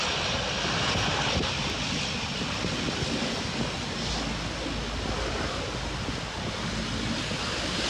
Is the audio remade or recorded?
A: recorded